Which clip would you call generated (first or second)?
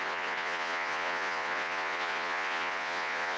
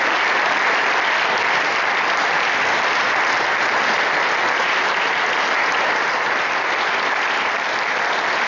first